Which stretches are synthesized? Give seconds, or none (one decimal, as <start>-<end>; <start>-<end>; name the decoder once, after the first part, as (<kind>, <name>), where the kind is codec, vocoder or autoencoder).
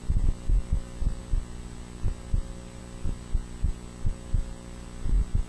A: none